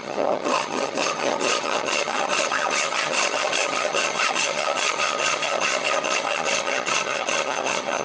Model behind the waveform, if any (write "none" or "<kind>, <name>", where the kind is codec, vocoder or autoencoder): vocoder, HiFi-GAN